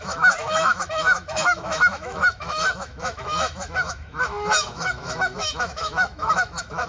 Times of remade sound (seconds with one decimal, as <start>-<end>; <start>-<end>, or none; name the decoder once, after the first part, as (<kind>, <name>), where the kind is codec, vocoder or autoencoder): 0.0-6.9 (autoencoder, DAC-VAE)